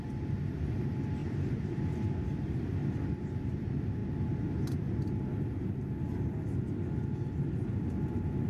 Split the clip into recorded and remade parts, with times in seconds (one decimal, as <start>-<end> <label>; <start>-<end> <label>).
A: 0.0-8.5 recorded